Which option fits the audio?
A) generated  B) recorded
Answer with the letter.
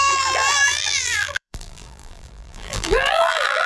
A